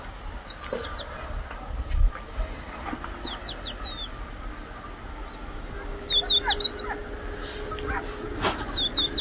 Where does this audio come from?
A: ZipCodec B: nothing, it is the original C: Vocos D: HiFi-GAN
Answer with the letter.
B